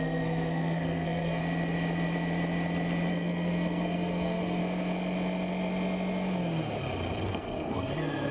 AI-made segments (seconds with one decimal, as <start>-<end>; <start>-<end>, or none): 0.0-1.4; 3.1-4.6; 7.3-8.3